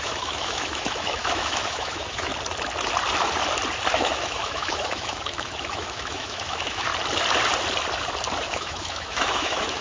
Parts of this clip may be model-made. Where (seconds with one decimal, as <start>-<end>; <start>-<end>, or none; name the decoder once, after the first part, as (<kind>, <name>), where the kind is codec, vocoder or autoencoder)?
0.0-2.3 (autoencoder, DAC-VAE); 3.9-6.9; 8.4-9.8